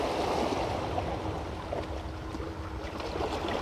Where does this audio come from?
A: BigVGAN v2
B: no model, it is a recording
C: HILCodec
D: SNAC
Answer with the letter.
B